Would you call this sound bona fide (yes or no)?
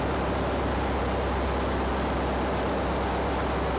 yes